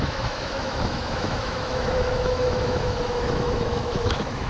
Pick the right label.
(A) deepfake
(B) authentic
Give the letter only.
A